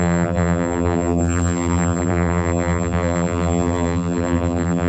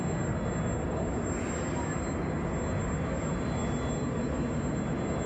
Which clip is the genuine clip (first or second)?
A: second